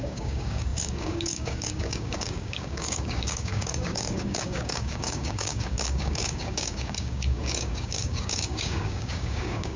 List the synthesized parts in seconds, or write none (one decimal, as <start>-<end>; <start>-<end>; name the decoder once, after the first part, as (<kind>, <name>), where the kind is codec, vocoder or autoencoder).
0.0-9.8 (codec, DAC)